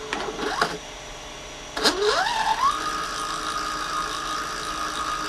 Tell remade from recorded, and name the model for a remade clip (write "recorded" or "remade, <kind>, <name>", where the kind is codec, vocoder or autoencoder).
recorded